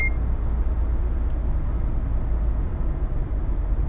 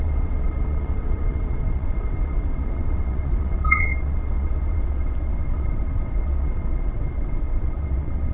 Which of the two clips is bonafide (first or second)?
first